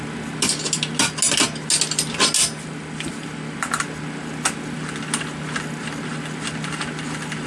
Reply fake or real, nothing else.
real